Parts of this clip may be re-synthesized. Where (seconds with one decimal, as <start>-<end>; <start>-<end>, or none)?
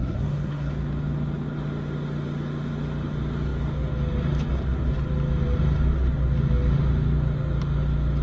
0.0-0.7